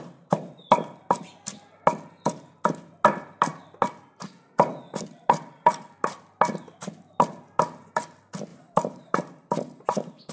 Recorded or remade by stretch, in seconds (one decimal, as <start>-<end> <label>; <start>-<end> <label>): 0.0-8.5 recorded; 8.5-10.3 remade